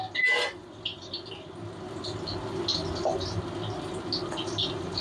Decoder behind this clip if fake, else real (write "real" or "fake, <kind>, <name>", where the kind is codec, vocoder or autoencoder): real